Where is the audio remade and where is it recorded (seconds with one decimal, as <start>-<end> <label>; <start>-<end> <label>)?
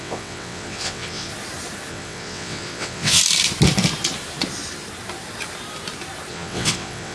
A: 0.0-1.3 remade; 1.3-1.9 recorded; 1.9-3.2 remade; 3.2-6.3 recorded; 6.3-7.1 remade